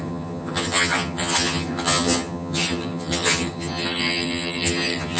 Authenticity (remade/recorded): remade